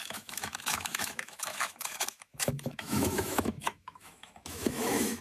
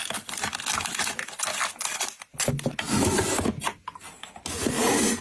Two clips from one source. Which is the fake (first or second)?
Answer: first